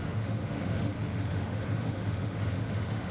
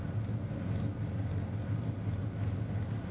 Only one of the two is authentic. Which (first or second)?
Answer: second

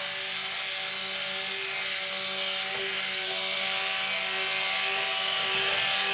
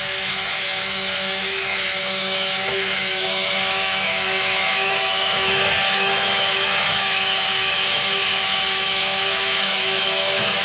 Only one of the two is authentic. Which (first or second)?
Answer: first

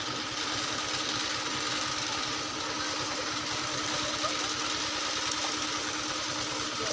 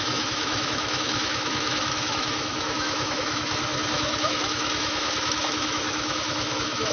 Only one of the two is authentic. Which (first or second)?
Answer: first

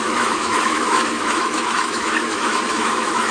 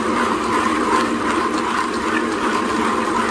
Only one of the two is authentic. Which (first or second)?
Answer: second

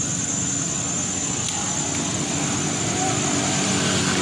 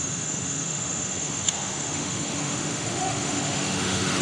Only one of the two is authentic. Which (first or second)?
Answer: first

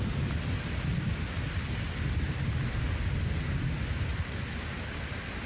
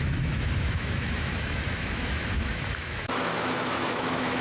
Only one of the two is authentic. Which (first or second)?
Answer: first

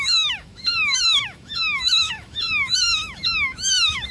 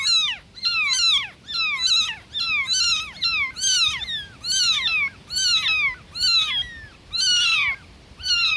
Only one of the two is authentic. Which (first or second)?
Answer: second